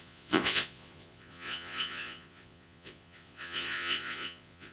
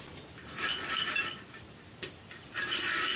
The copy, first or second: first